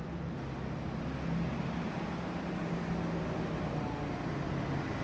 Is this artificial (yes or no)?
no